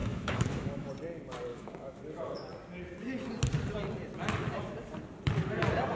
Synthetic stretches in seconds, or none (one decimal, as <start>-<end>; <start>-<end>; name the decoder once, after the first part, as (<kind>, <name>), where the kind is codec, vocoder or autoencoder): 0.0-0.9 (autoencoder, DAC-VAE); 1.5-2.0